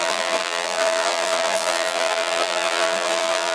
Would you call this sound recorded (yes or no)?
no